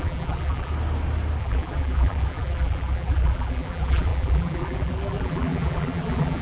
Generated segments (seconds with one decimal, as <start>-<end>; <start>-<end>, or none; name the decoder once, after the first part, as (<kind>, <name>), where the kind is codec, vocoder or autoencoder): 0.0-0.7 (vocoder, BigVGAN v2); 1.4-6.4